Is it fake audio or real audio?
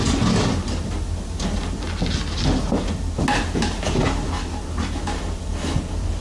real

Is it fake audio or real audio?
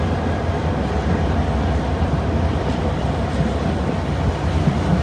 real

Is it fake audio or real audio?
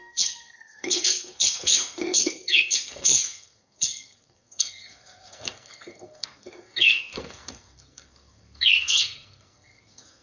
fake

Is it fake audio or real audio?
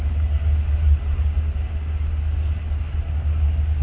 real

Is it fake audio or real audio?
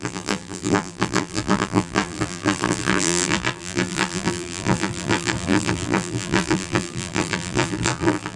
fake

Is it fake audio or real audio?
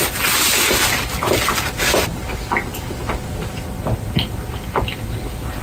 real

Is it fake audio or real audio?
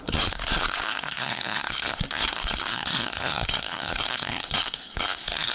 fake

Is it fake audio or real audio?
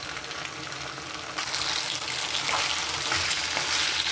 real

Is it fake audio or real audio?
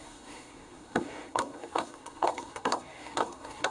fake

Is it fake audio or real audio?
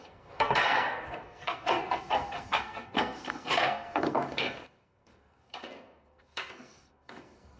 fake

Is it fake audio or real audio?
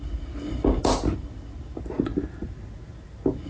real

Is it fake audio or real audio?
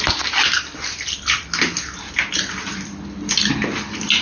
real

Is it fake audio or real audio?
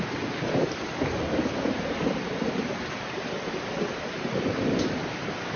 real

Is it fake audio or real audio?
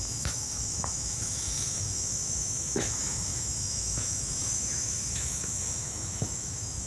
fake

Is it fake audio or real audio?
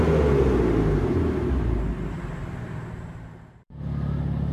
real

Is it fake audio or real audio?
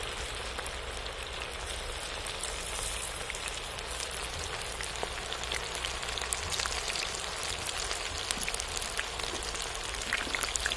real